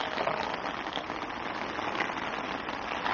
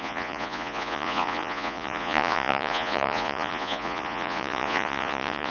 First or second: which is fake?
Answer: second